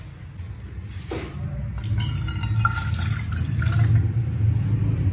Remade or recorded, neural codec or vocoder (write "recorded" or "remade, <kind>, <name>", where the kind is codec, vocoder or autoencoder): recorded